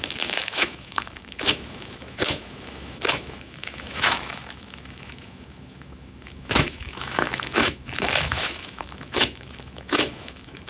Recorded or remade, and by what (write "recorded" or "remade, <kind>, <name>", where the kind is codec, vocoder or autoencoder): remade, autoencoder, DAC-VAE